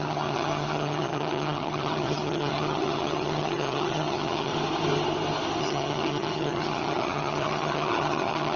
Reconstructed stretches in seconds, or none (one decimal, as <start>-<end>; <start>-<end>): 0.0-4.5; 5.6-8.6